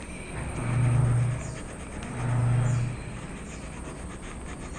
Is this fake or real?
real